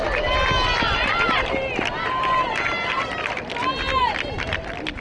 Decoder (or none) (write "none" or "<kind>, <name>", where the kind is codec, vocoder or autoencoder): none